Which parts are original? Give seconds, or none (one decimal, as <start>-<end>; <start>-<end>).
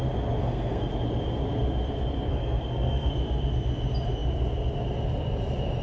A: 0.0-0.4; 0.9-2.3; 3.1-5.8